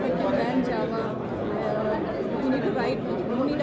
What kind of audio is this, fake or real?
real